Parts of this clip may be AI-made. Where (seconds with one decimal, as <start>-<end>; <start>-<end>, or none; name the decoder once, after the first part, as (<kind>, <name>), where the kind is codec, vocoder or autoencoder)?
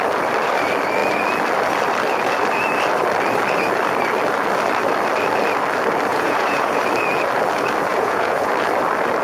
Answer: 6.1-6.8 (vocoder, Vocos); 7.9-8.5